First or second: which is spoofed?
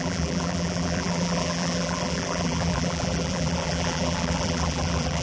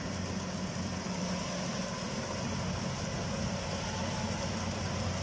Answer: first